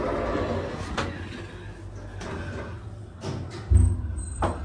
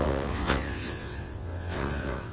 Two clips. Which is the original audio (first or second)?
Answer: first